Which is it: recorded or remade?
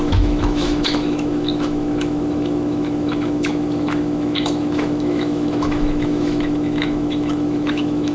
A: remade